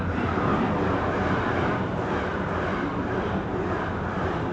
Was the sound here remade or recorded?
recorded